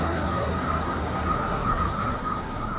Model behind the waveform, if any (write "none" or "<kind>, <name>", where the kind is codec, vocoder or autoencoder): codec, SNAC